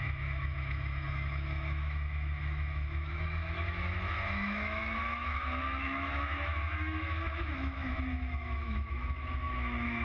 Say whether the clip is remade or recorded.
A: remade